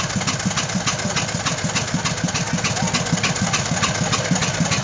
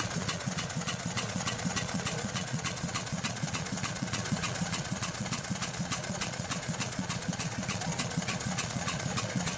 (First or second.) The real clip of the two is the first